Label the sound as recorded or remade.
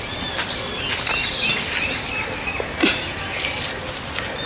recorded